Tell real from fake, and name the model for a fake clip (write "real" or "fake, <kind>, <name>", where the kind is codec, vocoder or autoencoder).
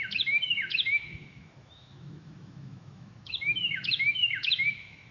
fake, autoencoder, DAC-VAE